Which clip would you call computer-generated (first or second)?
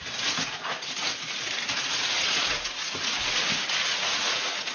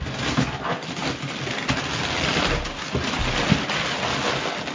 first